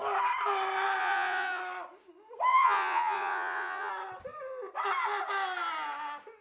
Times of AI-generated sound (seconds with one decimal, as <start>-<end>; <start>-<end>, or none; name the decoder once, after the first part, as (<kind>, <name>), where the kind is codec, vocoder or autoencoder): 1.0-1.6 (vocoder, Vocos); 2.5-3.9